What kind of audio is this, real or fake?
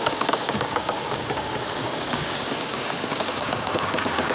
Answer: fake